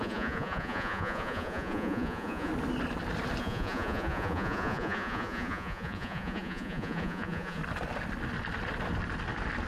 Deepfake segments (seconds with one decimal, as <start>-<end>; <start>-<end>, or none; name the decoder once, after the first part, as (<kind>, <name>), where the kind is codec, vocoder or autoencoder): 0.0-2.5 (vocoder, Vocos); 3.4-7.6